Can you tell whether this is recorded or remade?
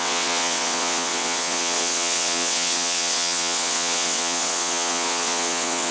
remade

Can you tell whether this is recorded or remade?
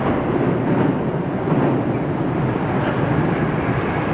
remade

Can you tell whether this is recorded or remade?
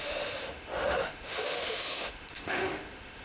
remade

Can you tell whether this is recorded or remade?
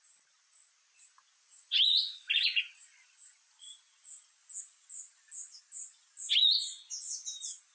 recorded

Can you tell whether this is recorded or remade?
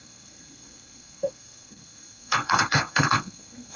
remade